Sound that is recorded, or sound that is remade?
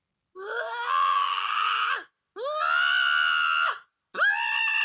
recorded